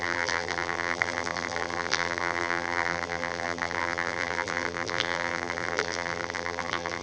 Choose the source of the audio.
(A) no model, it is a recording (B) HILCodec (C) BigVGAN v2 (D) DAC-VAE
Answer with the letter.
C